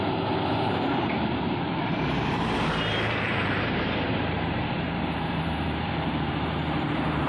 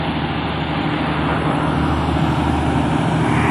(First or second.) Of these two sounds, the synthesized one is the first